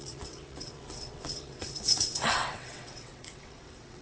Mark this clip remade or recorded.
remade